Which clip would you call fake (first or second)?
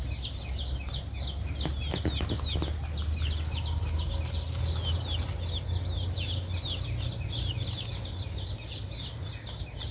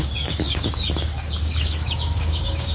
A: second